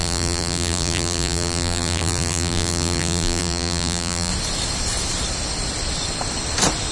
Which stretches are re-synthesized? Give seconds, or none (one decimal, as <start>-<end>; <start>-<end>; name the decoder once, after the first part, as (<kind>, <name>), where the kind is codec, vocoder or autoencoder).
0.0-4.3 (vocoder, BigVGAN v2)